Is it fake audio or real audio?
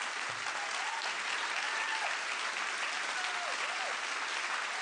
real